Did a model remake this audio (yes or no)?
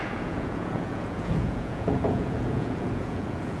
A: yes